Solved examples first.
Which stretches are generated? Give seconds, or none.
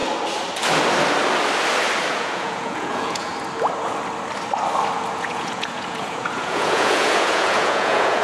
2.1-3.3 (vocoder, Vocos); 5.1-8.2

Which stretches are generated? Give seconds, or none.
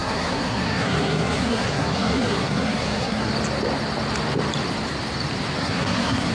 0.0-3.3 (codec, SNAC); 5.6-6.3